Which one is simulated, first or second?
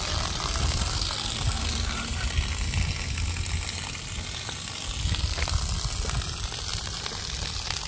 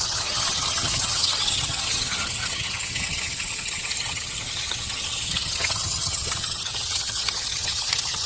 second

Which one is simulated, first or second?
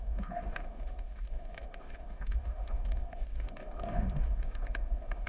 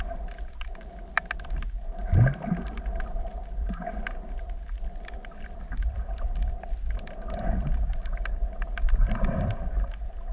first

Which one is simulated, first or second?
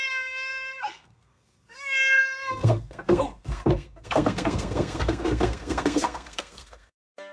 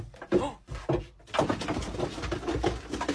first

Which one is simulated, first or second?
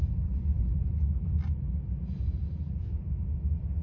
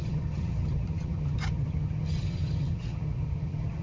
second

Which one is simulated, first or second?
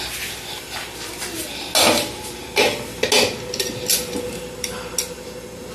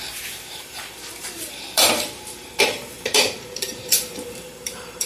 second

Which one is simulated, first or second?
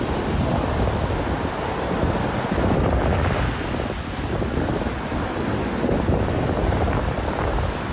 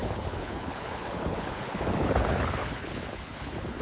second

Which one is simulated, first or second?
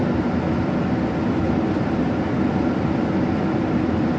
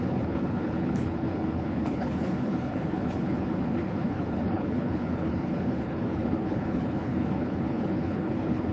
second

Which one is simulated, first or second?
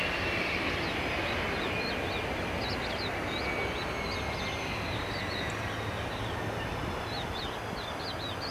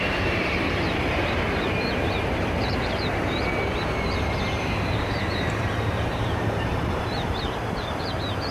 second